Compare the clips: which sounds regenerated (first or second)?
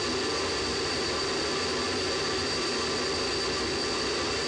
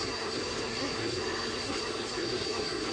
second